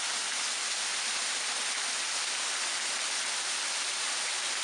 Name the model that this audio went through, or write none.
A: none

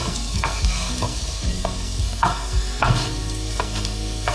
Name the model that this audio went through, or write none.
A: codec, SNAC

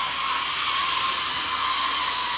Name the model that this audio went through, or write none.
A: none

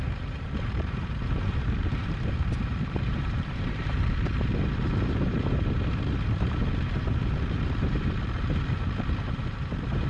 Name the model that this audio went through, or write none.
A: vocoder, BigVGAN v2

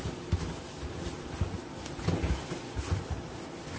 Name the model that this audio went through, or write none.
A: none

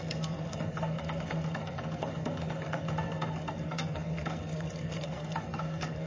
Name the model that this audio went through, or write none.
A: codec, SNAC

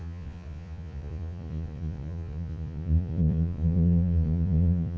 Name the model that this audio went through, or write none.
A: vocoder, Vocos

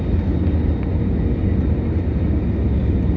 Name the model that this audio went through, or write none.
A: none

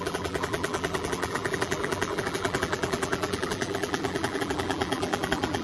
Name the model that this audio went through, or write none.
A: vocoder, BigVGAN v2